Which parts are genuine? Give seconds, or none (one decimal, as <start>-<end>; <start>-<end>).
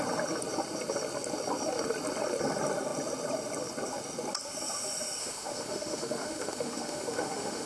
0.0-5.2